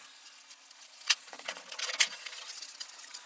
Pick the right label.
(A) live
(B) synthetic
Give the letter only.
B